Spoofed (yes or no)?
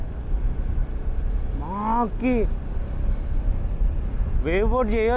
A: no